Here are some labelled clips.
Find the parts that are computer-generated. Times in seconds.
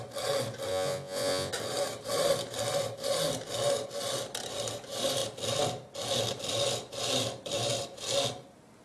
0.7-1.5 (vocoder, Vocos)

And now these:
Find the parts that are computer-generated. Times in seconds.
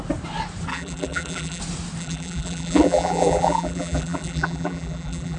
0.7-1.6 (vocoder, BigVGAN v2); 2.0-5.4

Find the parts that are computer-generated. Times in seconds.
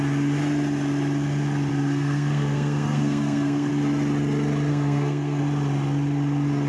1.7-3.7 (codec, SNAC); 4.7-5.4